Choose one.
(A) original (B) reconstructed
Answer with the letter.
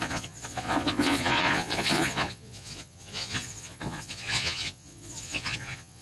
B